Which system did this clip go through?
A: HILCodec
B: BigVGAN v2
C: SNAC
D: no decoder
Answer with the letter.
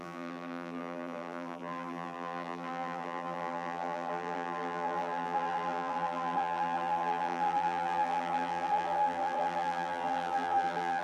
B